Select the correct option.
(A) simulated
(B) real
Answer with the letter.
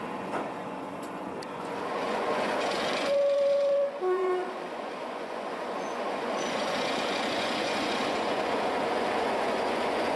A